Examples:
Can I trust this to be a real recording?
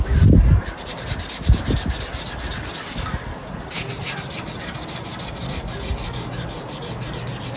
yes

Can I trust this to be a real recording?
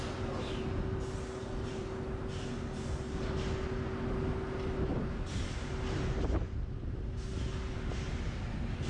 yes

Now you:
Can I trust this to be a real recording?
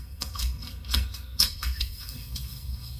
no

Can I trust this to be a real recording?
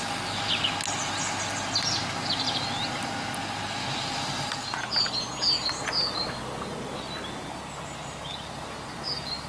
yes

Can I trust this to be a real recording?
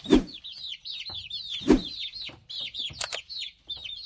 yes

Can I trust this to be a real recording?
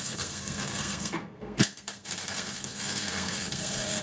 no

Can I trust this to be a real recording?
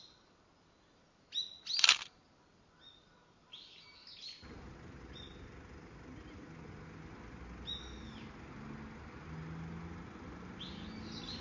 yes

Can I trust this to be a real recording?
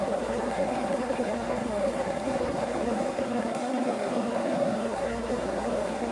no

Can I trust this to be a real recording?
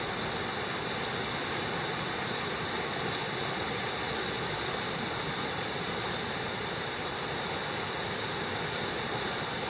yes